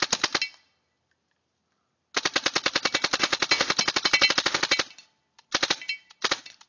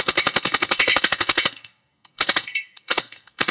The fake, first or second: second